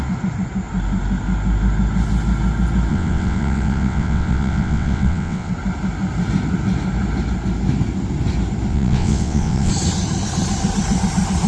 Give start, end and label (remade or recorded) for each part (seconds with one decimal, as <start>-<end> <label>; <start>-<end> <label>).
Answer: 0.0-2.9 recorded; 2.9-5.5 remade; 5.5-8.7 recorded; 8.7-9.7 remade; 9.7-11.5 recorded

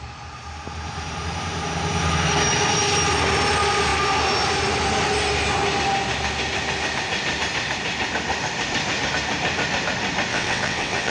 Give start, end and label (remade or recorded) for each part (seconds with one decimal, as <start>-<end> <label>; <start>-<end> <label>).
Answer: 0.0-10.3 recorded; 10.3-11.1 remade

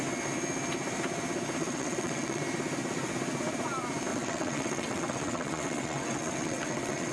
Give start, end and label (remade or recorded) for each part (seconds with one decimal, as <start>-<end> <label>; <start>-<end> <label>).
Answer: 0.0-1.6 recorded; 1.6-2.4 remade; 2.4-4.1 recorded; 4.1-7.1 remade

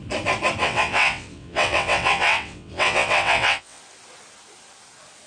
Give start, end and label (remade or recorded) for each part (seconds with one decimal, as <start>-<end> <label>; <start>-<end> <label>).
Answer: 0.0-0.6 recorded; 0.6-3.8 remade; 3.8-5.3 recorded

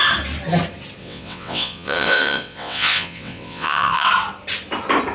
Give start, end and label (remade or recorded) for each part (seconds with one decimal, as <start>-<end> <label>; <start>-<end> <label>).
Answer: 0.0-1.0 recorded; 1.0-4.1 remade; 4.1-5.1 recorded

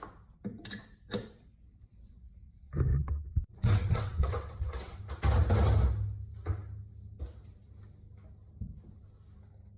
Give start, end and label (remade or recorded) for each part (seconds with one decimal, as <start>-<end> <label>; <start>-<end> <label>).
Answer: 0.0-2.9 recorded; 2.9-5.0 remade; 5.0-9.8 recorded

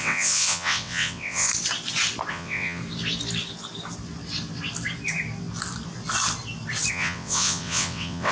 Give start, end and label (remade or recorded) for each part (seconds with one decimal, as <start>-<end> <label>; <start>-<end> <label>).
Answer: 0.0-1.5 remade; 1.5-2.3 recorded; 2.3-2.8 remade; 2.8-6.9 recorded; 6.9-8.3 remade

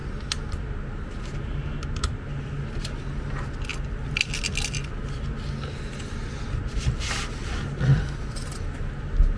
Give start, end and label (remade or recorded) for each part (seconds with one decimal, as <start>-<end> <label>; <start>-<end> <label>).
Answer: 0.0-9.4 recorded